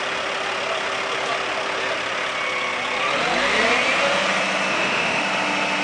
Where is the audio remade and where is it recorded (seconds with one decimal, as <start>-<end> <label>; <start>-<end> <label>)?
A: 0.0-4.7 recorded; 4.7-5.2 remade; 5.2-5.8 recorded

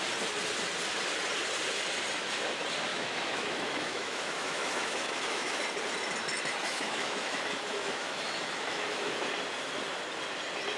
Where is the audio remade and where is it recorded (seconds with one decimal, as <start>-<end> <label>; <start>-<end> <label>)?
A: 0.0-2.9 recorded; 2.9-5.6 remade; 5.6-6.6 recorded; 6.6-9.2 remade; 9.2-10.8 recorded